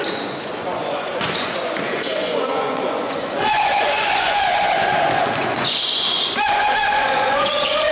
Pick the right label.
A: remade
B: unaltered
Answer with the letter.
A